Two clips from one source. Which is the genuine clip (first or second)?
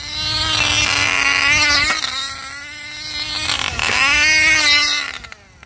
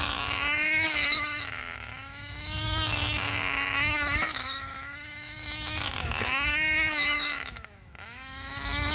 first